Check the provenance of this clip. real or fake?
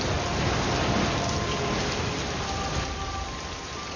real